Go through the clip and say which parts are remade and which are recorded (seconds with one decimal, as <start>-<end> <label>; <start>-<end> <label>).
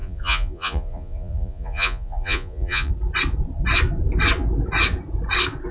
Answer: 0.0-2.9 remade; 2.9-5.7 recorded